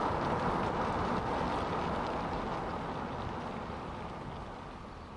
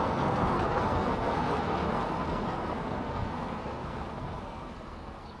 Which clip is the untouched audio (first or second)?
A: first